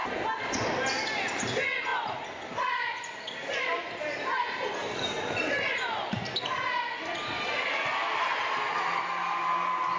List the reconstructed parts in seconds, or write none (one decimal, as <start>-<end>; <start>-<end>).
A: none